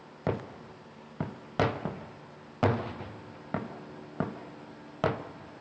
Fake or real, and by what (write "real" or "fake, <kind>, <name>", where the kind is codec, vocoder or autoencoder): real